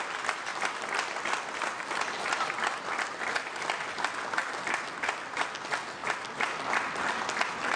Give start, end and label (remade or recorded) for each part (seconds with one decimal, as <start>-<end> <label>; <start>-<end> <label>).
0.0-7.8 recorded